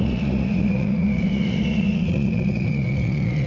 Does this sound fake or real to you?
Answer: fake